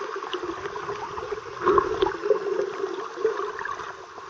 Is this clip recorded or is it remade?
recorded